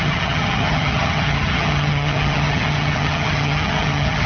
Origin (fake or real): fake